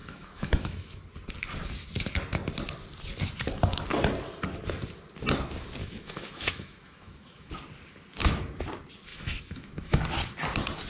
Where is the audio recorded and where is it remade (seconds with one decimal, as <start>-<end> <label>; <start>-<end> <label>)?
0.0-1.0 remade; 1.0-5.8 recorded; 5.8-7.5 remade; 7.5-9.1 recorded; 9.1-10.0 remade; 10.0-10.9 recorded